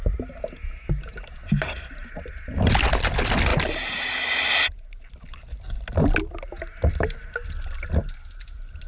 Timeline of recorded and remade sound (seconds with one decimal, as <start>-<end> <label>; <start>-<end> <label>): 0.0-3.5 recorded; 3.5-4.5 remade; 4.5-8.9 recorded